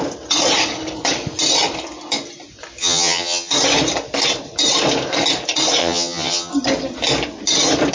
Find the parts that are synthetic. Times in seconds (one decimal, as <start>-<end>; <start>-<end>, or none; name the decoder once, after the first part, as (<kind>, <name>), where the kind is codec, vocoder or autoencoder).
2.8-3.5 (vocoder, HiFi-GAN); 5.8-6.5